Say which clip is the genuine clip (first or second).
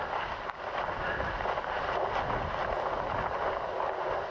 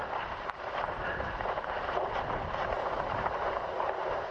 first